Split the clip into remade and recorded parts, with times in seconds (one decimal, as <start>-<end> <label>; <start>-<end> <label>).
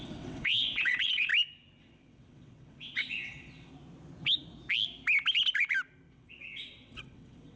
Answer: 0.0-1.3 remade; 1.3-1.8 recorded; 1.8-3.7 remade; 3.7-6.1 recorded; 6.1-7.6 remade